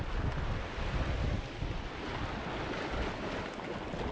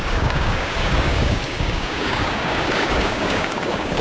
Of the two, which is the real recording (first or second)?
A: first